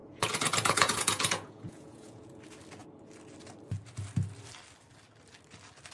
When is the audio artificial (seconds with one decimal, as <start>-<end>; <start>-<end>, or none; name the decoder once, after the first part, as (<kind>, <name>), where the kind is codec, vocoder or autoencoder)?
0.0-2.4 (vocoder, Vocos)